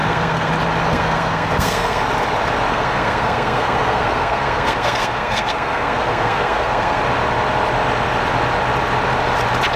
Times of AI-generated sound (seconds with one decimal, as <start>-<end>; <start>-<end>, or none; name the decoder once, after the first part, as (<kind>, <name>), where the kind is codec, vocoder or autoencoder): 0.0-0.5 (codec, SNAC); 0.9-2.0; 2.7-7.0